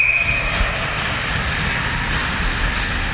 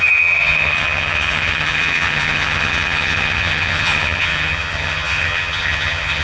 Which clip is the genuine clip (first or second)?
first